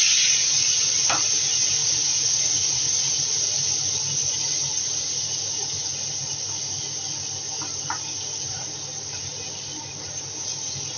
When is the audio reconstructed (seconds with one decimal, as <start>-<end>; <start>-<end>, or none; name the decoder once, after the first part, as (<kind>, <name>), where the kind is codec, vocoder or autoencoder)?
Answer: 1.8-2.9 (vocoder, Vocos)